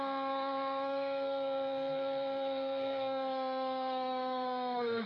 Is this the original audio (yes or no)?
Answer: no